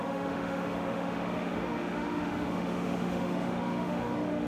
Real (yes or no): no